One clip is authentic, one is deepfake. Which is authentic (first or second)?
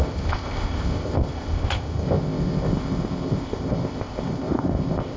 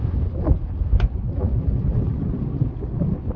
second